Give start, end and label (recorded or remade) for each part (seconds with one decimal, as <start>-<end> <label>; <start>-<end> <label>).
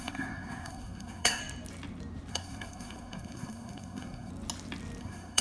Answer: 0.0-1.4 remade; 1.4-2.3 recorded; 2.3-4.3 remade; 4.3-5.0 recorded; 5.0-5.4 remade